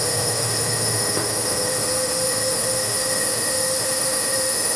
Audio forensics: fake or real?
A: fake